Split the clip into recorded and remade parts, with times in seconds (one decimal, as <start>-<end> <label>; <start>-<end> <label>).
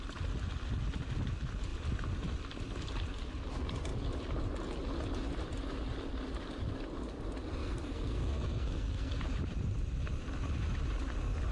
0.0-7.6 recorded; 7.6-9.2 remade; 9.2-11.5 recorded